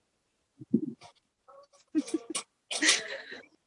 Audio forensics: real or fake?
real